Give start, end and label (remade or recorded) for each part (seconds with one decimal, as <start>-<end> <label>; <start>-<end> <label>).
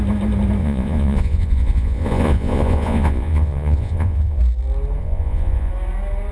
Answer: 0.0-0.6 recorded; 0.6-4.4 remade; 4.4-5.0 recorded; 5.0-5.7 remade; 5.7-6.3 recorded